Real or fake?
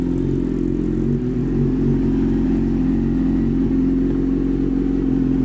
real